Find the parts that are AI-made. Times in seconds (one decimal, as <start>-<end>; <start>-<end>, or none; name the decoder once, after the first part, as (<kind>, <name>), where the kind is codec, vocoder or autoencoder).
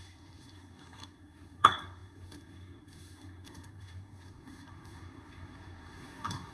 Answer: 0.0-6.5 (codec, SNAC)